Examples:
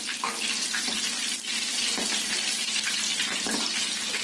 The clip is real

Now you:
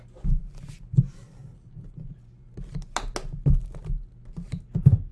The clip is real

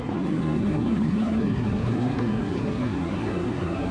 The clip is fake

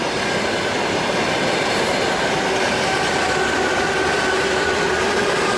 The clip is real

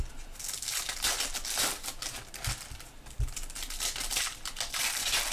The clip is real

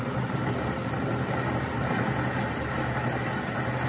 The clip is real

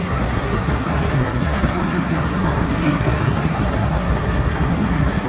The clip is fake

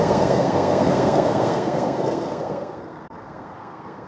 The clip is fake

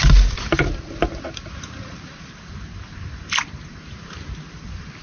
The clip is real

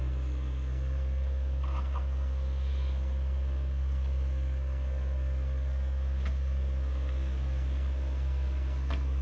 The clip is fake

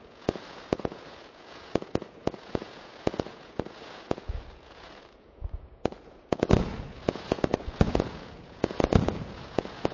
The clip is fake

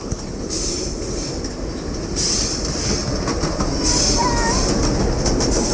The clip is real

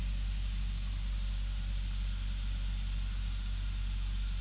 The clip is real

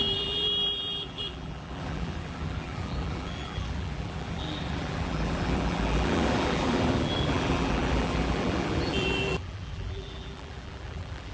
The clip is fake